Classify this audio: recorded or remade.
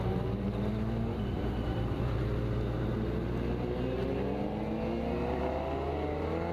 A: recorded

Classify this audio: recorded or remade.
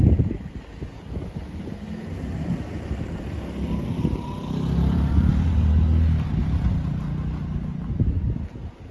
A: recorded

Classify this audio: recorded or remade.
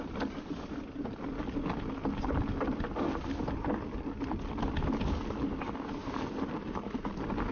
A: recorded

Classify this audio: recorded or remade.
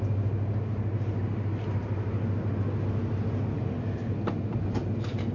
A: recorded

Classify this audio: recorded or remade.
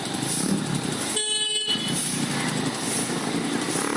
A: recorded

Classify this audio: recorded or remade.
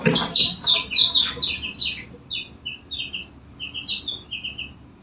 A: recorded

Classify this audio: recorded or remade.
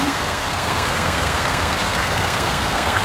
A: remade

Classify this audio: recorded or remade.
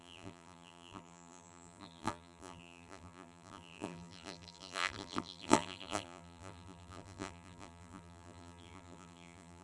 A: remade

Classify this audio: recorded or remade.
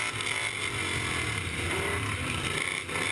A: recorded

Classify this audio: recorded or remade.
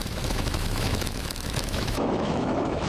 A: remade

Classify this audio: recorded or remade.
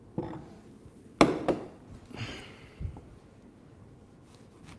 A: recorded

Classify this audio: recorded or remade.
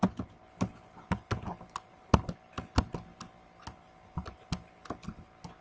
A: recorded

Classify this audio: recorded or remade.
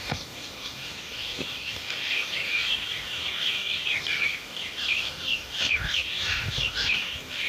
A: remade